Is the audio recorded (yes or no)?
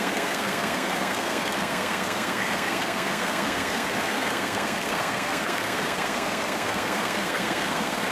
no